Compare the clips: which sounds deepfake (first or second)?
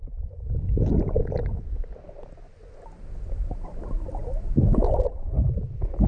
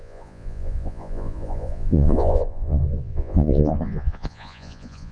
second